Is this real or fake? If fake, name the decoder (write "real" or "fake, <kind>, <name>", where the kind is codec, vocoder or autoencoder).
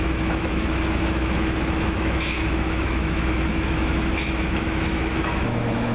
fake, autoencoder, DAC-VAE